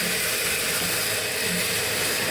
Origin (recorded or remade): recorded